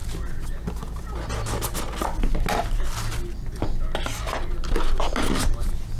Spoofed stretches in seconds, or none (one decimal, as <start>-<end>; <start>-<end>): none